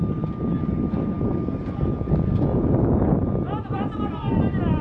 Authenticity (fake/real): real